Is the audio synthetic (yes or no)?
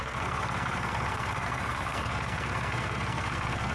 yes